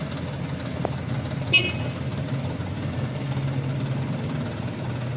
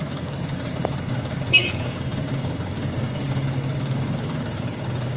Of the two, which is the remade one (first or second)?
second